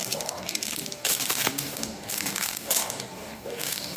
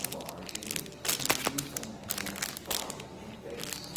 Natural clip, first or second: second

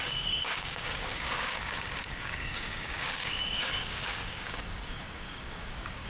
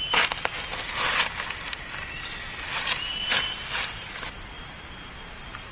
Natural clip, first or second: second